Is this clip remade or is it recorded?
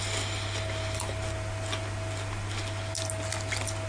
recorded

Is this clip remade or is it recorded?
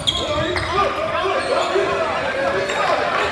recorded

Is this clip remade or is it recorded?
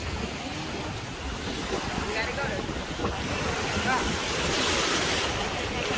recorded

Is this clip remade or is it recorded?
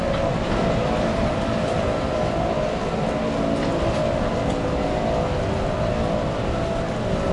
recorded